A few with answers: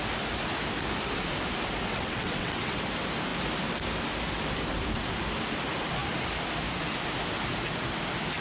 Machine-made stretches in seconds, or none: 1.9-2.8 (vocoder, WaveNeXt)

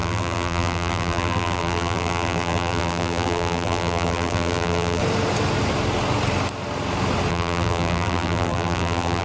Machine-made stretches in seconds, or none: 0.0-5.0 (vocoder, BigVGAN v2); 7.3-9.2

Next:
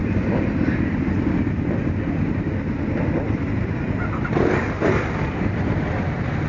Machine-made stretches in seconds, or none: none